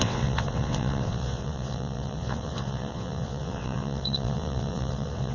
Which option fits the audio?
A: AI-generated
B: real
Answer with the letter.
A